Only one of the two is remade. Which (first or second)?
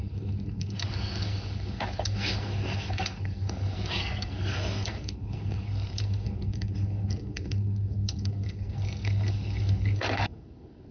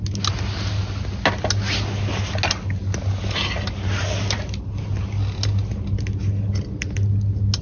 first